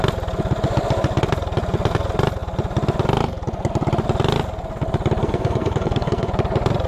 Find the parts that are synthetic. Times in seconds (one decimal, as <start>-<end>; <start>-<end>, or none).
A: 5.2-6.3